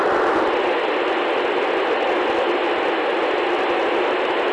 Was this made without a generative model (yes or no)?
yes